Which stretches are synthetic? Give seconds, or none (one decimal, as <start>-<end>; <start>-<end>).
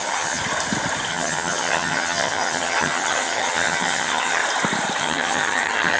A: 0.0-0.4; 1.1-4.4; 5.0-6.0